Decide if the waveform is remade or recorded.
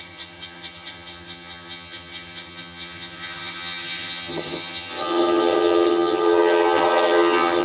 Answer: remade